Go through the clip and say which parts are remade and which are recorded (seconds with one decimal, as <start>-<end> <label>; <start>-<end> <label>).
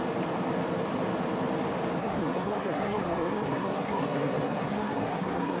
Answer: 0.0-2.0 recorded; 2.0-5.6 remade